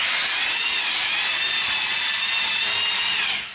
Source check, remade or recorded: recorded